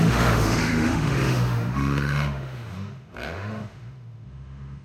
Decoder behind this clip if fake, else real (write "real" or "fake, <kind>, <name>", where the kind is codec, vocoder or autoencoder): fake, autoencoder, DAC-VAE